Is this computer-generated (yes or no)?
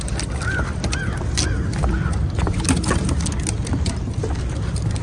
no